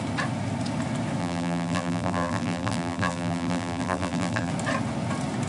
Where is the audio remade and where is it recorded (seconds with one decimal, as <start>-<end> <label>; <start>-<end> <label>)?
0.0-1.2 recorded; 1.2-4.5 remade; 4.5-5.5 recorded

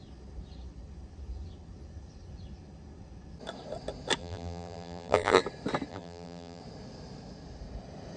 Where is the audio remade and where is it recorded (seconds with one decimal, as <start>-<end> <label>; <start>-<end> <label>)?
0.0-4.2 recorded; 4.2-5.4 remade; 5.4-5.9 recorded; 5.9-6.6 remade; 6.6-8.2 recorded

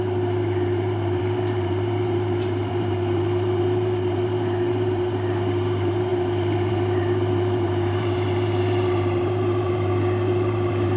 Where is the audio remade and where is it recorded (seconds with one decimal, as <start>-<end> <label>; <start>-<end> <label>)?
0.0-11.0 remade

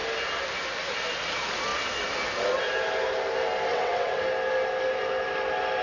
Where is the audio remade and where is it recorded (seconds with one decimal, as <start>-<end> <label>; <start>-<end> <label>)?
0.0-3.7 recorded; 3.7-4.2 remade; 4.2-5.8 recorded